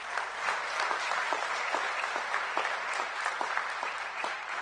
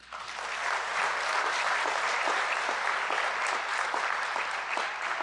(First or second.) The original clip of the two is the second